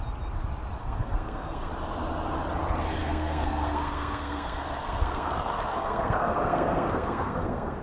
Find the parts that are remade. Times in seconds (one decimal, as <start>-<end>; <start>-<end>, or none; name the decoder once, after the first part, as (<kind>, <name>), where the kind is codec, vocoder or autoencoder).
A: 0.8-1.7 (codec, SNAC); 3.0-7.8